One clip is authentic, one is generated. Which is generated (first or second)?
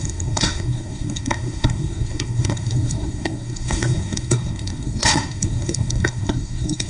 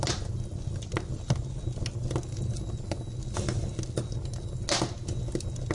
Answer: first